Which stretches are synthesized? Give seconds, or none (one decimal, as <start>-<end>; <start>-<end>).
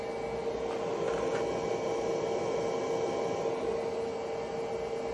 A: none